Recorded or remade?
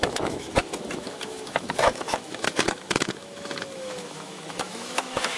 remade